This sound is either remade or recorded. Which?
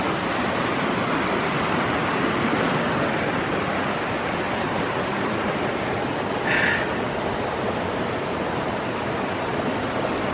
recorded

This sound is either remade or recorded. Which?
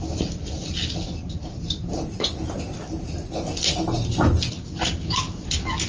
recorded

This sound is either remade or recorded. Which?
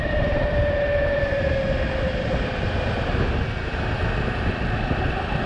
recorded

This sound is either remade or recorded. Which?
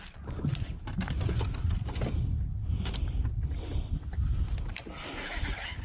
recorded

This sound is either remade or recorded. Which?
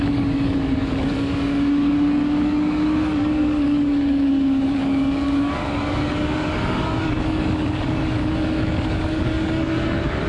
remade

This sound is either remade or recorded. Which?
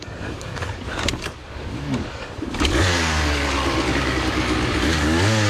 remade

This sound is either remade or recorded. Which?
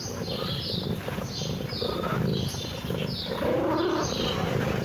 recorded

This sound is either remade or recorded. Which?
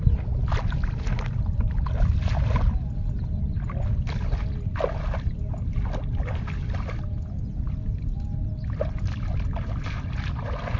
recorded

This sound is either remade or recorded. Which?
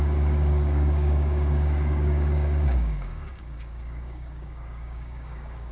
remade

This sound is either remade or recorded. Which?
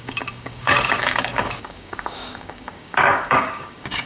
remade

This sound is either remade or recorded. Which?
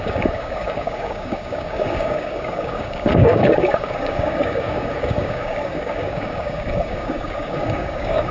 remade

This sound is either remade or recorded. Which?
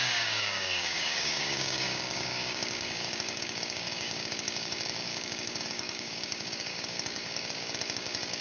remade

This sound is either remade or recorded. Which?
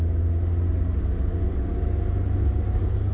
recorded